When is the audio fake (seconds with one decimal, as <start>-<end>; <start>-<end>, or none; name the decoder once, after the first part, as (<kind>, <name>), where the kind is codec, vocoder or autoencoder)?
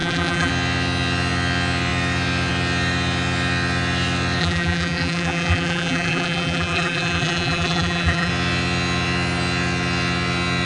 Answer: 0.0-0.5 (vocoder, BigVGAN v2); 4.4-8.3